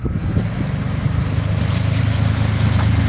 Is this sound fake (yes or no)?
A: no